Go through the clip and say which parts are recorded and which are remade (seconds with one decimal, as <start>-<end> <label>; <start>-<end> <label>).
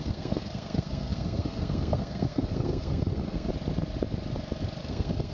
0.0-3.5 remade; 3.5-4.8 recorded; 4.8-5.3 remade